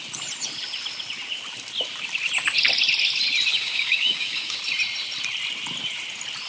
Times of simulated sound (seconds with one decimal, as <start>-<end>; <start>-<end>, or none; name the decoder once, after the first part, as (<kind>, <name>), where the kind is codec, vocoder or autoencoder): 3.5-4.6 (codec, DAC)